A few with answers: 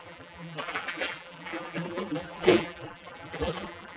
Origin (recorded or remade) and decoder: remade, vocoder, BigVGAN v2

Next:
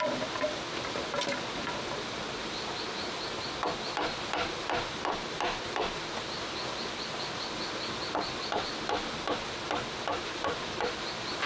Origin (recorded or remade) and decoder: recorded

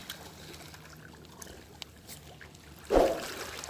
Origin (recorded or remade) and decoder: recorded